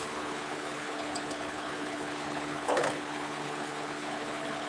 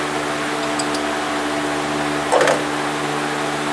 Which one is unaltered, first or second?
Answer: second